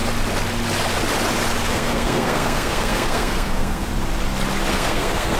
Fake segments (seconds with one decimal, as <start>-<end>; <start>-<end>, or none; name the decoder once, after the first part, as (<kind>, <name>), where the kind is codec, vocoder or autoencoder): 1.7-3.9 (codec, SNAC); 4.7-5.4